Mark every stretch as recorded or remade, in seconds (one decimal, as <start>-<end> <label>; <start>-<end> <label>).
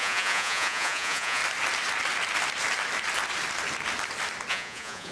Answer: 0.0-1.4 remade; 1.4-4.5 recorded; 4.5-5.1 remade